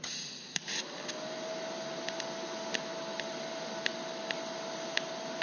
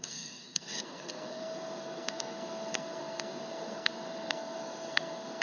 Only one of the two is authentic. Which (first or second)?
first